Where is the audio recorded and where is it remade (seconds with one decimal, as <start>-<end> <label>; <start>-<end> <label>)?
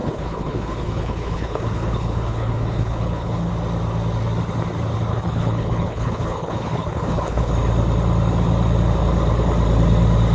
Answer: 0.0-3.5 remade; 3.5-5.1 recorded; 5.1-7.5 remade; 7.5-10.3 recorded